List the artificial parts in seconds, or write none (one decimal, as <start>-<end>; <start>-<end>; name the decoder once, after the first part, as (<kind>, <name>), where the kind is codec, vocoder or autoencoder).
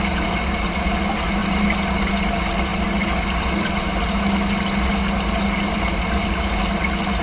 1.4-2.0 (vocoder, BigVGAN v2)